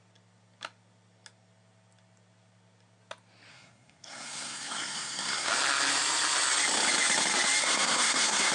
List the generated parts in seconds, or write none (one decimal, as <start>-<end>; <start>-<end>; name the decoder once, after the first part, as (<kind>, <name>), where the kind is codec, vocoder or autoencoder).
3.5-5.5 (codec, SNAC); 7.6-8.5